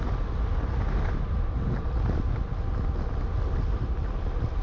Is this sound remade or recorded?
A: recorded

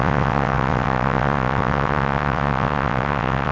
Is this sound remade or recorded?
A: remade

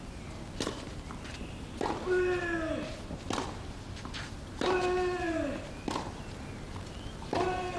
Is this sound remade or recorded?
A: recorded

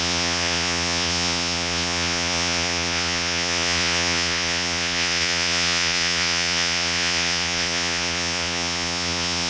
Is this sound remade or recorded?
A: remade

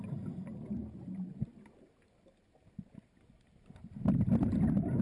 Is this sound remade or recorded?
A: recorded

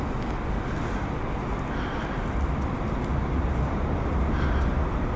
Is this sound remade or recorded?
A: recorded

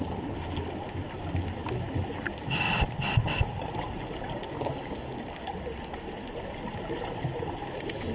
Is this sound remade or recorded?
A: recorded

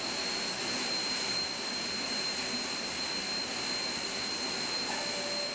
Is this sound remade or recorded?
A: recorded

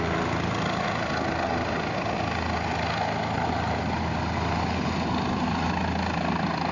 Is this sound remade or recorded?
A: recorded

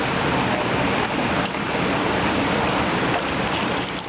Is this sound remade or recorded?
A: recorded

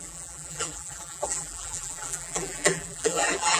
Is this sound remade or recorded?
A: remade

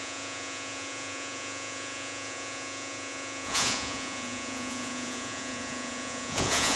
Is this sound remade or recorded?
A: remade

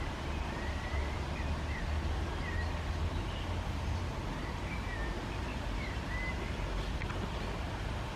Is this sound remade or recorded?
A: recorded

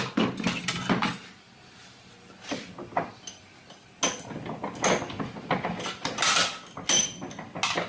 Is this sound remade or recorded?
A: recorded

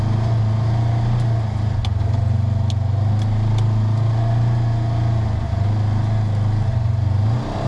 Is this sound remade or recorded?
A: recorded